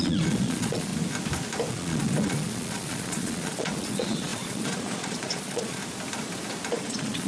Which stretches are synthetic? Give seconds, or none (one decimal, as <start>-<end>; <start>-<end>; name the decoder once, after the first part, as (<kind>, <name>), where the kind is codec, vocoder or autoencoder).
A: 0.0-0.9 (vocoder, Vocos); 1.7-5.8; 6.7-7.3

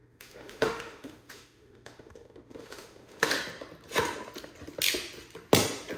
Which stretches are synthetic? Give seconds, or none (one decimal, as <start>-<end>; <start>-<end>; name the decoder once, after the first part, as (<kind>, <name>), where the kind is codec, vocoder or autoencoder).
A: 0.0-3.4 (autoencoder, DAC-VAE)